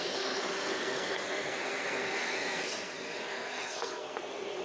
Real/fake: fake